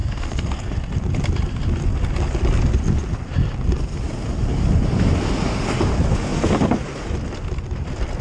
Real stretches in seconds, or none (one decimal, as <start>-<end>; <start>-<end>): 0.7-8.2